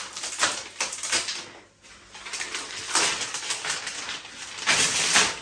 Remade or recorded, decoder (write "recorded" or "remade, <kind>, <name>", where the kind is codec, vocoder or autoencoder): recorded